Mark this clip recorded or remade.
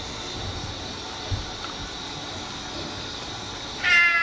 recorded